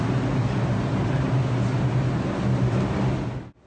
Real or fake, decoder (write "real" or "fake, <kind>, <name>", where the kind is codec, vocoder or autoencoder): real